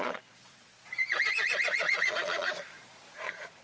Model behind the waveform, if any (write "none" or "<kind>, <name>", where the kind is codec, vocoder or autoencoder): vocoder, Vocos